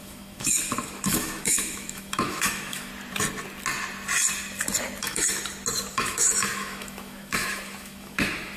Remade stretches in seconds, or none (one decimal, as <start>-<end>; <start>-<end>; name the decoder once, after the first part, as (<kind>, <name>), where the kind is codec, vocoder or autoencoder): 0.0-2.9 (autoencoder, DAC-VAE); 5.0-5.4; 5.9-8.6

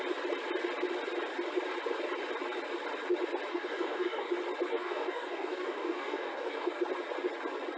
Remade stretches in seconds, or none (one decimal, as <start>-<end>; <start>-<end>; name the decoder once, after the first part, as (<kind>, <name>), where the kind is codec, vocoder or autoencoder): 3.5-4.3 (codec, DAC); 4.7-6.8

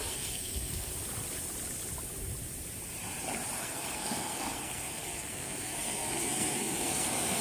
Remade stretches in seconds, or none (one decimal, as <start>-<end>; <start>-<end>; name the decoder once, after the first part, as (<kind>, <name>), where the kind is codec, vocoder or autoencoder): 0.0-0.9 (codec, SNAC); 3.6-7.4

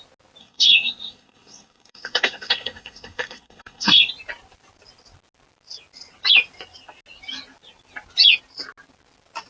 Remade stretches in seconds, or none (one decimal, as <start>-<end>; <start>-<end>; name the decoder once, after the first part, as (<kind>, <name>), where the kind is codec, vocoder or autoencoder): 0.4-4.1 (codec, SNAC)

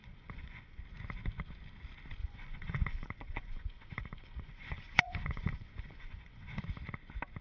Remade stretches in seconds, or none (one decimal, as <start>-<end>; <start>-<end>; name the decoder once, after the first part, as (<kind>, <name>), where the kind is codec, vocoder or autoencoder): 0.0-0.8 (vocoder, Vocos); 2.2-6.6